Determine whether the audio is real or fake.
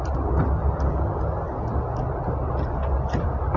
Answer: real